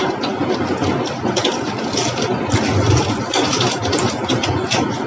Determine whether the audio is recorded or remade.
recorded